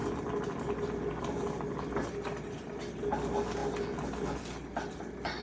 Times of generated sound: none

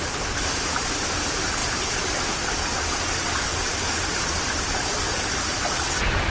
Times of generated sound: none

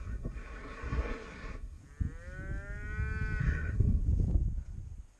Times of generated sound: 0.0-1.8 (codec, SNAC); 3.4-4.0

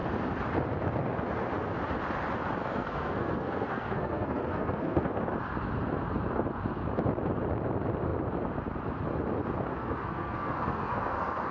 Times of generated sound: 2.6-5.2 (codec, SNAC); 9.7-11.5

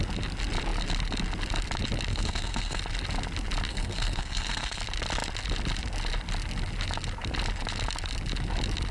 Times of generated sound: 2.1-2.8 (codec, SNAC); 3.7-4.8

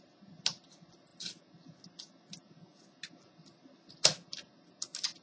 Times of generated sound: none

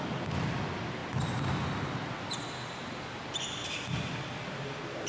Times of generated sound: none